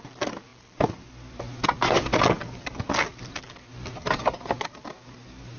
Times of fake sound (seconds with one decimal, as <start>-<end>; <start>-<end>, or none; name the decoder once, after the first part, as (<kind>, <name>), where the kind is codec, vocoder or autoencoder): none